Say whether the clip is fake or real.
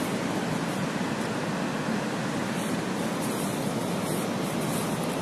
real